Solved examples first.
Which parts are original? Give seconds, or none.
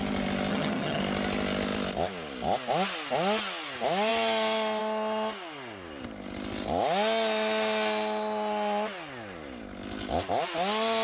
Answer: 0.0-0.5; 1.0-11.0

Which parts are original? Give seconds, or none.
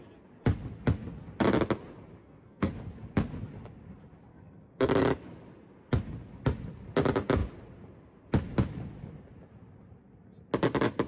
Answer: 0.0-2.2; 2.7-4.3; 4.9-11.1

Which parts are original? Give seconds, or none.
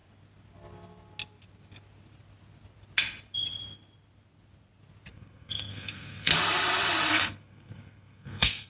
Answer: 0.0-5.1; 6.3-7.1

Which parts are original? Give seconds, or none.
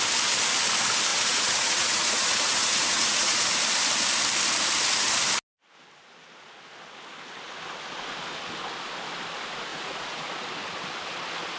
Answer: 0.0-1.1; 3.4-9.7; 10.3-11.6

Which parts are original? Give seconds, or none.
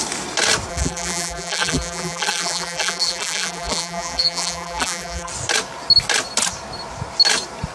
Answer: 0.0-0.7; 5.3-7.7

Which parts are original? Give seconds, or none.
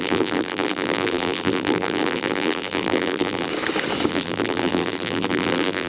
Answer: 3.5-4.1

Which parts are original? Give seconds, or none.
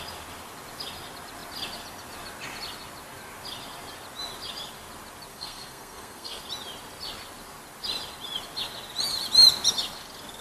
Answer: 0.0-5.3; 6.4-10.4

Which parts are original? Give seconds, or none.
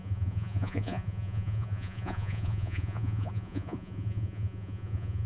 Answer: none